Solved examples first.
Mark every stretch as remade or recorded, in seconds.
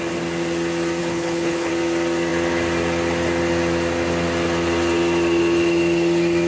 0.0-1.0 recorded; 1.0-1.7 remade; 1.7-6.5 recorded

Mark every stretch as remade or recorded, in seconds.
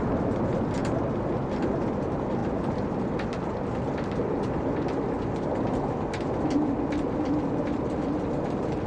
0.0-8.9 recorded